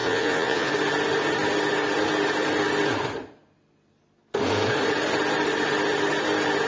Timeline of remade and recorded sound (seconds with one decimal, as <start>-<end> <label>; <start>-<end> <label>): 0.0-0.7 remade; 0.7-6.7 recorded